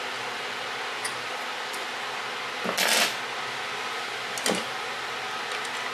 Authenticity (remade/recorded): recorded